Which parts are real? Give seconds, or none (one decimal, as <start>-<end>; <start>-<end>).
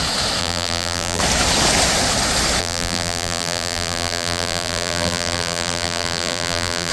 0.0-0.4; 1.2-2.6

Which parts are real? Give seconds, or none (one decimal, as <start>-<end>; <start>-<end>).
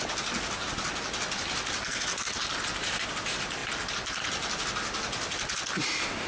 0.0-1.8; 2.3-6.3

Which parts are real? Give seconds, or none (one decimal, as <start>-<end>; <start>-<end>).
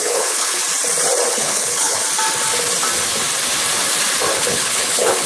0.6-1.3; 2.0-4.3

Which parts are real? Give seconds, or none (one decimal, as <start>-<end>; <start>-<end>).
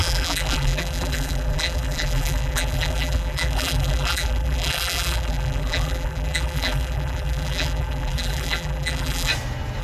9.3-9.8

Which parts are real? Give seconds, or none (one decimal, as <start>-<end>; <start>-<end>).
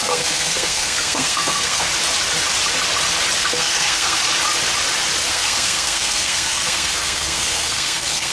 1.9-3.4; 4.2-5.3